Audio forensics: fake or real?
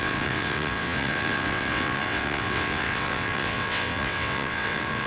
fake